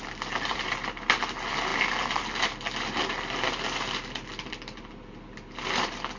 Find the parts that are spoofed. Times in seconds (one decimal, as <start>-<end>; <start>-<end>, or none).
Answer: none